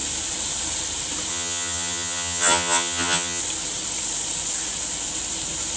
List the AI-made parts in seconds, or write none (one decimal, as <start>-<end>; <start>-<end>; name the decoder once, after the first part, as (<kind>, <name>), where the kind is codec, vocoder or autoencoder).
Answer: 1.3-3.4 (vocoder, HiFi-GAN)